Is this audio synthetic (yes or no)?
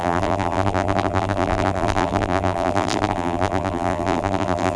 yes